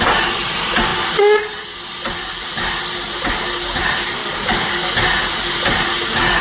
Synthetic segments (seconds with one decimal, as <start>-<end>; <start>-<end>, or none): 4.2-4.9